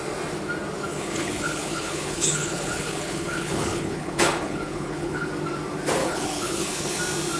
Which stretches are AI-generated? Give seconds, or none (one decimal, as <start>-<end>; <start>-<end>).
0.9-5.3; 6.0-7.0